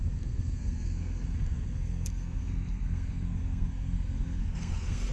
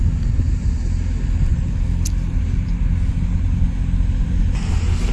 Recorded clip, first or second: second